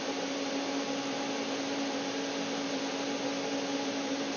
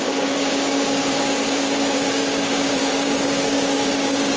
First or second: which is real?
first